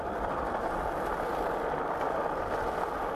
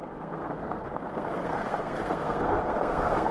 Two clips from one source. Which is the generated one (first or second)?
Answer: second